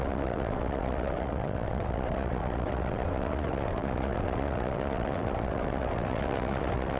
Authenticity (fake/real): fake